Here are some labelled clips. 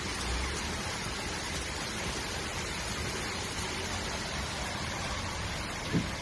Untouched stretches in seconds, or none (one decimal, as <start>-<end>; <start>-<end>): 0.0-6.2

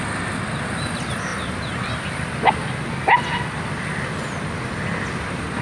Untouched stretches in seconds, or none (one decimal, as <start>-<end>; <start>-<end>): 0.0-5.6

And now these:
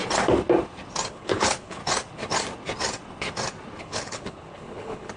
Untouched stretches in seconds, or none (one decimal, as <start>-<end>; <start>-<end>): 0.0-1.1; 1.8-3.8

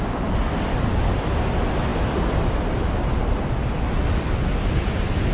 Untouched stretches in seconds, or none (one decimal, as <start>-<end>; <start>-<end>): 0.0-5.3

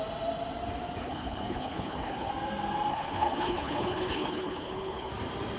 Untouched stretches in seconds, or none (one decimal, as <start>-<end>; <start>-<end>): 0.0-1.0; 2.3-2.9; 5.1-5.6

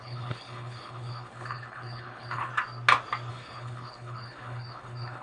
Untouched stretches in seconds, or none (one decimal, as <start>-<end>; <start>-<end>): 2.5-3.3

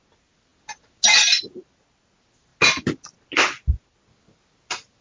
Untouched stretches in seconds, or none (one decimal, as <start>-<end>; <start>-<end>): 0.0-5.0

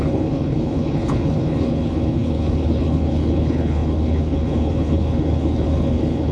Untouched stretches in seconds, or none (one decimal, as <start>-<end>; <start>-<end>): none